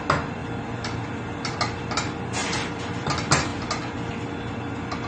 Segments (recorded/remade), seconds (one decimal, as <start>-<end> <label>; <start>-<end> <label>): 0.0-0.4 recorded; 0.4-1.4 remade; 1.4-2.4 recorded; 2.4-3.1 remade; 3.1-5.1 recorded